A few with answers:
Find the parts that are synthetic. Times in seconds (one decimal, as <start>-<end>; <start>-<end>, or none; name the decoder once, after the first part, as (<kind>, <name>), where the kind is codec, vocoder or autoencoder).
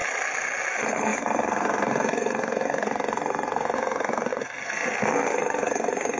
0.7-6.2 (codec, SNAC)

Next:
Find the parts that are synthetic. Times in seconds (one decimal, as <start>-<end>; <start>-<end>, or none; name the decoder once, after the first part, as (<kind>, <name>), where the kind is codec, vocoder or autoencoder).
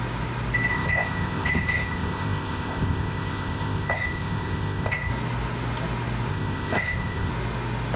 0.7-5.1 (codec, ZipCodec); 6.3-7.3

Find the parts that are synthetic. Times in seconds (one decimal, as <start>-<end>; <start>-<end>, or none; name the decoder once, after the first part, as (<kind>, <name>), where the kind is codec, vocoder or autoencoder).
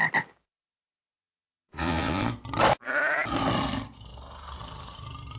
1.2-2.3 (vocoder, Vocos)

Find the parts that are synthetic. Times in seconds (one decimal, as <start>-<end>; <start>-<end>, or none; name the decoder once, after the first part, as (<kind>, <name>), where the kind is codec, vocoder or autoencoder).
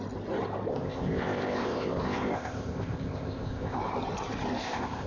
0.7-3.8 (codec, ZipCodec); 4.6-5.1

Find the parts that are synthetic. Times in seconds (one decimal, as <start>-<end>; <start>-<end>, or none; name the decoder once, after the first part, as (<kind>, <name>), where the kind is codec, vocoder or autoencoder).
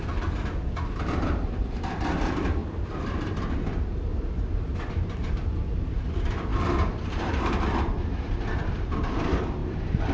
0.0-2.6 (vocoder, BigVGAN v2); 3.1-4.1; 4.9-10.1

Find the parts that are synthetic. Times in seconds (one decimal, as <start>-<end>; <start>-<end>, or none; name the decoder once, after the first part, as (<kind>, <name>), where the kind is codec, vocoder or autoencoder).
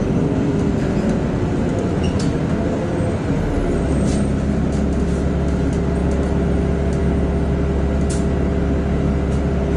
1.7-2.4 (vocoder, Vocos)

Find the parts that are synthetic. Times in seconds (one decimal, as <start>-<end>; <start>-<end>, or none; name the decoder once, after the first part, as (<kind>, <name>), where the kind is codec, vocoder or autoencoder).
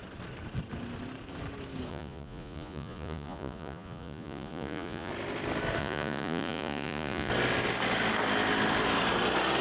1.9-5.1 (vocoder, Vocos); 5.8-7.3